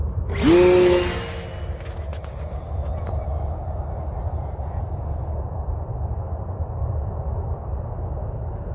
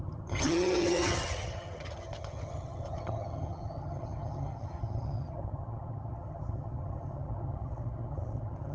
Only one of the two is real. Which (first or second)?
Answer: first